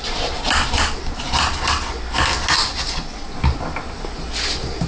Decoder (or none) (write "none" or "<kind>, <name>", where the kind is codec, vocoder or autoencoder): none